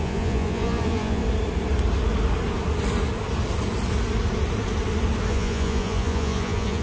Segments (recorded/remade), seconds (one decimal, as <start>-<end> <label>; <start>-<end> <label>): 0.0-1.2 remade; 1.2-5.3 recorded; 5.3-6.8 remade